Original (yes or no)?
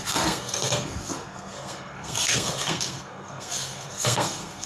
no